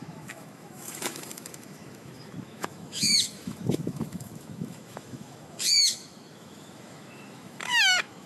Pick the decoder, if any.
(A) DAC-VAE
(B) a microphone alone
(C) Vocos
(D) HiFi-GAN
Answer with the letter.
A